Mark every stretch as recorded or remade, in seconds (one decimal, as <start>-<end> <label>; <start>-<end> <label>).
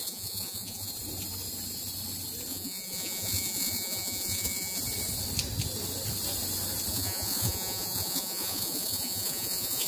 0.0-0.9 remade; 0.9-2.5 recorded; 2.5-4.8 remade; 4.8-6.9 recorded; 6.9-9.9 remade